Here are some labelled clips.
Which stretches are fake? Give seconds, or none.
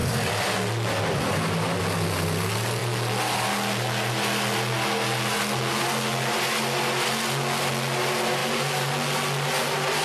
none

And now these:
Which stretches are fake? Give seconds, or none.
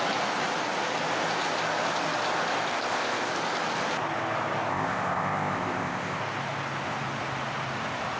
2.7-3.3 (codec, ZipCodec); 4.7-6.2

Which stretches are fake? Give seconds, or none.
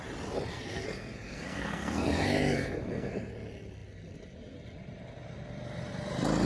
0.5-3.3 (codec, SNAC)